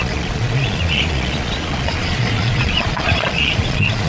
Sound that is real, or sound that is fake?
fake